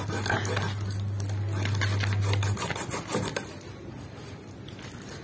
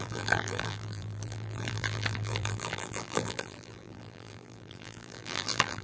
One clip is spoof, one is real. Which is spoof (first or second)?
second